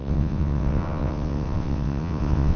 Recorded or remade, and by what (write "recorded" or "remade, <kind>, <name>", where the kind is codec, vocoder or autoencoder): remade, vocoder, WaveNeXt